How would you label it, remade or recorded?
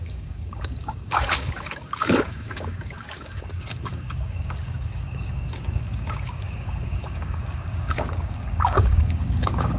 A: remade